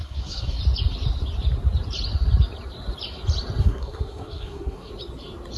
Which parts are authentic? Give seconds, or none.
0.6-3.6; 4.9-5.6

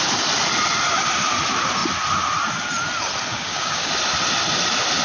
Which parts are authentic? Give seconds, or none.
0.0-3.3; 3.9-5.0